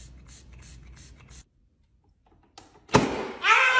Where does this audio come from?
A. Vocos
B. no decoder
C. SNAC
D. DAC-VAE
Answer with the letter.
B